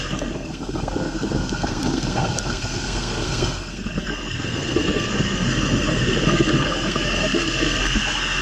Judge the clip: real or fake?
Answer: fake